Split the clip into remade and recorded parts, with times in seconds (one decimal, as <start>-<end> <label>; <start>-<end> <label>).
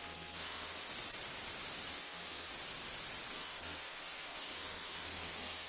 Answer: 0.0-0.9 remade; 0.9-1.9 recorded; 1.9-2.5 remade; 2.5-3.3 recorded; 3.3-5.7 remade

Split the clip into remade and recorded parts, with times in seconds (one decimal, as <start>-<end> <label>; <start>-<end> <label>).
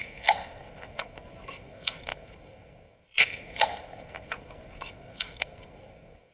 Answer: 0.0-6.3 remade